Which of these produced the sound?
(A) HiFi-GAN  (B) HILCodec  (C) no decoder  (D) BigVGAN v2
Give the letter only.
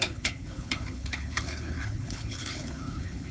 B